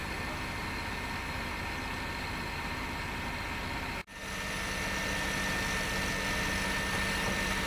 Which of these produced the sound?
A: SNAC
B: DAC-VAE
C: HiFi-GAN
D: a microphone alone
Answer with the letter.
D